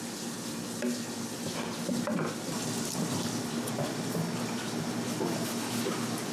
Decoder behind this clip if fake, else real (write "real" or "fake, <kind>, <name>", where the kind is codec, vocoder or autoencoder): real